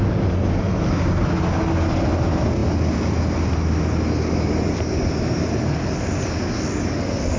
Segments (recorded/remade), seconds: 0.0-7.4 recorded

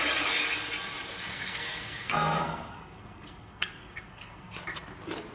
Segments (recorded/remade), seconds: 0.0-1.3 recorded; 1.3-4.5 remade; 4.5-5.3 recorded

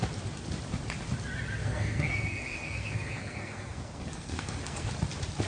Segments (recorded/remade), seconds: 0.0-1.6 recorded; 1.6-4.9 remade; 4.9-5.5 recorded

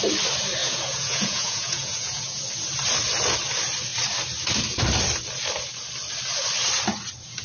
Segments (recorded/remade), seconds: 0.0-0.6 recorded; 0.6-2.4 remade; 2.4-7.4 recorded

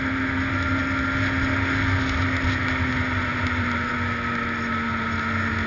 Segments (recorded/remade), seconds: 0.0-3.3 recorded; 3.3-3.9 remade; 3.9-5.7 recorded

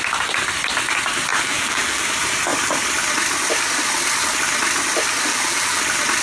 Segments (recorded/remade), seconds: 0.0-1.3 recorded; 1.3-2.0 remade; 2.0-5.3 recorded; 5.3-5.8 remade; 5.8-6.2 recorded